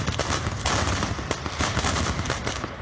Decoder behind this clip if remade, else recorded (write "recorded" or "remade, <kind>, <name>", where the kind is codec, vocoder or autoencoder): recorded